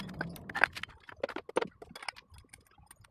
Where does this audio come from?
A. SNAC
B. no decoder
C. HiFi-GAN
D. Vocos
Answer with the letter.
B